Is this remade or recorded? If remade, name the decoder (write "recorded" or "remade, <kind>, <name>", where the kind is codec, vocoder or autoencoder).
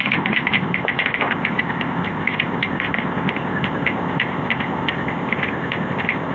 remade, codec, ZipCodec